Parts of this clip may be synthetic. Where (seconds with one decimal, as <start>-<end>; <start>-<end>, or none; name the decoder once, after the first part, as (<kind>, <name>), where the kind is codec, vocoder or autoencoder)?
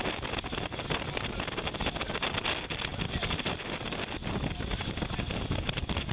none